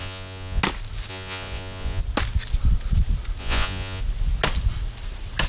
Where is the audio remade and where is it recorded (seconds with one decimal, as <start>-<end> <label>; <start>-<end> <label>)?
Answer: 0.0-0.6 remade; 0.6-1.1 recorded; 1.1-2.0 remade; 2.0-3.4 recorded; 3.4-4.0 remade; 4.0-5.5 recorded